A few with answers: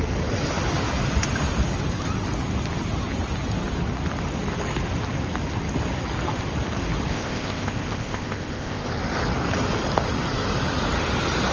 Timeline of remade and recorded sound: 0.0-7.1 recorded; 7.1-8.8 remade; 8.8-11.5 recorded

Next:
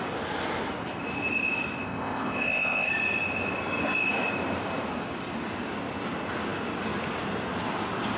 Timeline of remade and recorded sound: 0.0-1.8 recorded; 1.8-2.9 remade; 2.9-8.2 recorded